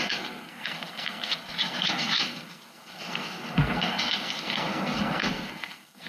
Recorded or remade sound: remade